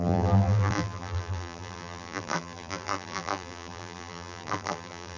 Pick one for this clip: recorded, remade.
remade